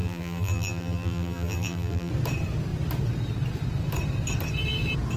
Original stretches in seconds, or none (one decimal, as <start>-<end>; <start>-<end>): 2.1-5.2